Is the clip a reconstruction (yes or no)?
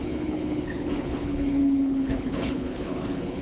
yes